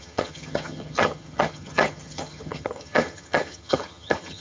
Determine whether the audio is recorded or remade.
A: remade